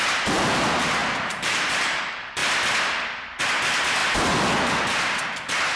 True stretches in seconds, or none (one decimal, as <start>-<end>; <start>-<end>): 0.0-1.0; 2.0-5.8